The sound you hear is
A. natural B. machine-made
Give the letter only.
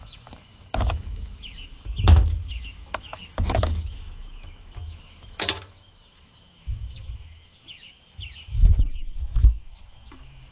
B